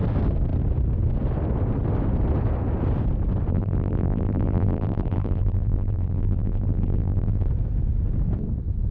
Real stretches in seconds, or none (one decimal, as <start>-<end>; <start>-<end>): 0.0-3.5; 7.5-8.9